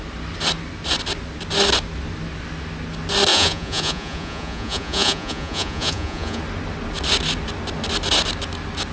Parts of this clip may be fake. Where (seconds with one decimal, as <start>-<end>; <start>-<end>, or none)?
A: 3.3-6.4